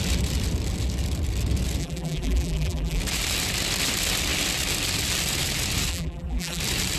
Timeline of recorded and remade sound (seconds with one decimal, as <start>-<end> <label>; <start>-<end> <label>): 0.0-1.8 recorded; 1.8-3.0 remade; 3.0-5.9 recorded; 5.9-6.6 remade; 6.6-7.0 recorded